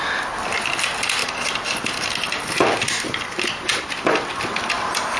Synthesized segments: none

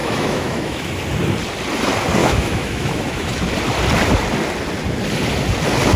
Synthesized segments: 0.0-1.0 (autoencoder, DAC-VAE); 2.2-3.4

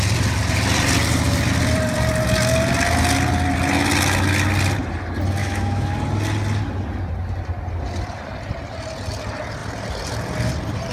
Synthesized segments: 5.4-5.9 (autoencoder, DAC-VAE)

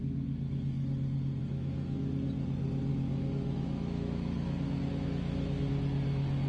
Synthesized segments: 1.4-2.1 (autoencoder, DAC-VAE); 2.9-5.7